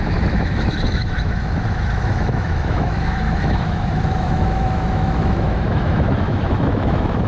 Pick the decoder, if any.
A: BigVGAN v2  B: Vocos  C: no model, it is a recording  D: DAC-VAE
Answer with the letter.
D